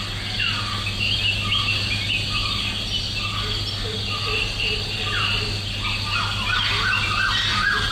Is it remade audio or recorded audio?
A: recorded